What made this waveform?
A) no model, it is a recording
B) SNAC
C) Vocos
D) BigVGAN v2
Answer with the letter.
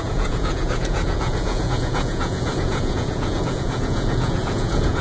C